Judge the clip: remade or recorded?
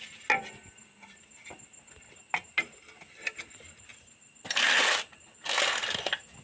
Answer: recorded